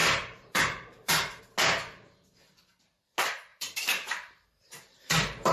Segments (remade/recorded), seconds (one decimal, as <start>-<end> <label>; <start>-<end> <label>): 0.0-1.4 remade; 1.4-3.5 recorded; 3.5-5.5 remade